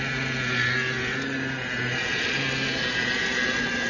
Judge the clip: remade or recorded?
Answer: recorded